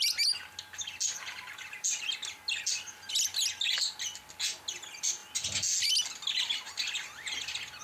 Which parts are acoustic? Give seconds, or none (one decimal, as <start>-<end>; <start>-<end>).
0.0-7.8